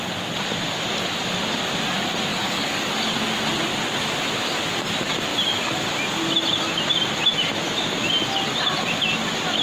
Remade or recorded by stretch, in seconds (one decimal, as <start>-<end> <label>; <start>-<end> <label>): 0.0-2.3 recorded; 2.3-2.9 remade; 2.9-9.6 recorded